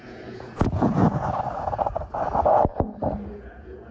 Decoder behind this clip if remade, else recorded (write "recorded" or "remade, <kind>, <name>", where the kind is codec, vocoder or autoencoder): remade, vocoder, Vocos